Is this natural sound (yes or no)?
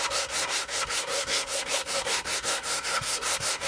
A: no